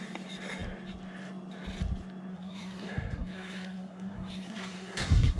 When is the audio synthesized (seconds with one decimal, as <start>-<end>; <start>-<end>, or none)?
2.3-5.4